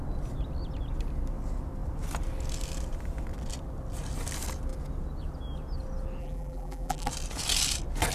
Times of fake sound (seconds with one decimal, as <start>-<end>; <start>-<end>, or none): 6.2-7.1